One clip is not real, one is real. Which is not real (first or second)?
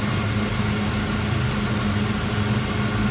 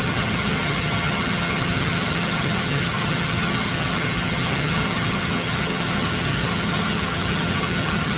second